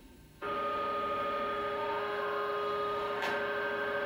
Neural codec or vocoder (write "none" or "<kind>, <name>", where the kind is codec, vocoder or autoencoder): autoencoder, DAC-VAE